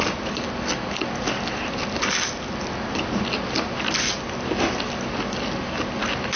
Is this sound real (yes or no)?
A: yes